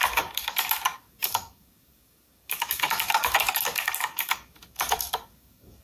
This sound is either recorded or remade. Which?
remade